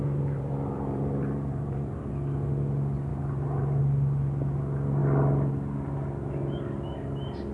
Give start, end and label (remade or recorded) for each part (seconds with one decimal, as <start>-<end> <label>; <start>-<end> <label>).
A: 0.0-2.1 remade; 2.1-3.1 recorded; 3.1-3.8 remade; 3.8-7.5 recorded